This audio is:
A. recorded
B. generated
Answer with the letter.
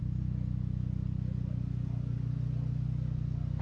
A